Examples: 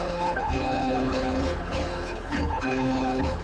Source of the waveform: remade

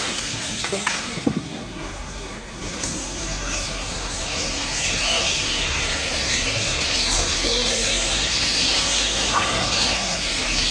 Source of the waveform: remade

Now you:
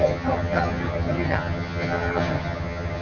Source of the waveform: remade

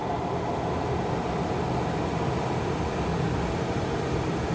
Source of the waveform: recorded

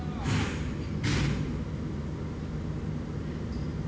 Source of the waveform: recorded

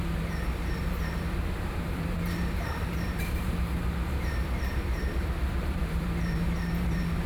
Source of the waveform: remade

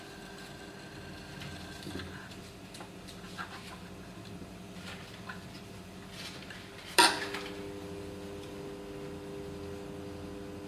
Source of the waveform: recorded